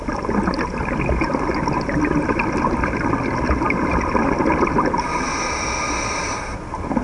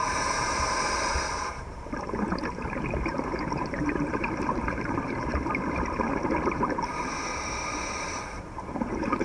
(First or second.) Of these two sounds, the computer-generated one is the second